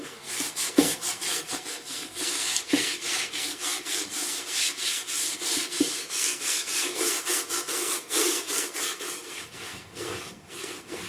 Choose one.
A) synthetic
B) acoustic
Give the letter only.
A